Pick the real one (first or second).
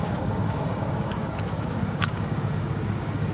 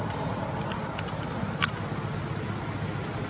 second